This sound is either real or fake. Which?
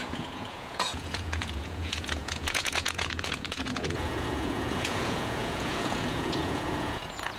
fake